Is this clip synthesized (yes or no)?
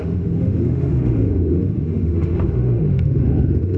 yes